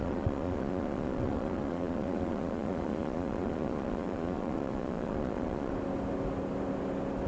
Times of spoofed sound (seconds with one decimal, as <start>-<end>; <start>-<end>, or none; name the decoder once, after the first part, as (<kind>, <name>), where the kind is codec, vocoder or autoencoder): 0.0-5.7 (vocoder, Vocos)